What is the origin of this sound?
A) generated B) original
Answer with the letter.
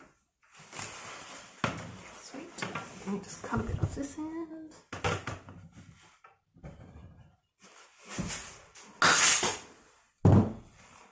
B